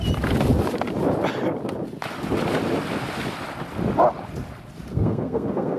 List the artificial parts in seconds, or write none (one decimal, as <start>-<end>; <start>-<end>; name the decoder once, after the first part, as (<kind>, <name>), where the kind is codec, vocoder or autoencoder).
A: 4.9-5.8 (codec, SNAC)